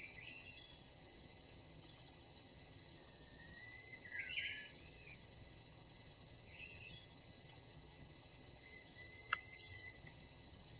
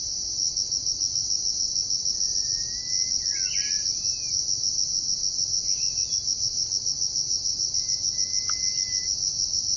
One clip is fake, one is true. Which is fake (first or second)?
first